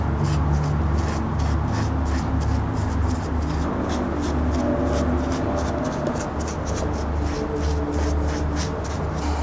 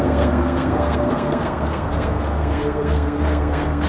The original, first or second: first